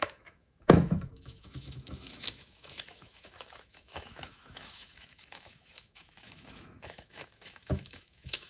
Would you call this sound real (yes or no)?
no